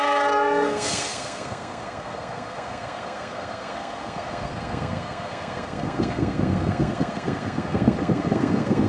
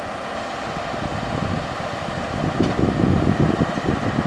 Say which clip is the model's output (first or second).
first